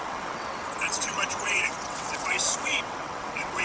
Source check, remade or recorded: remade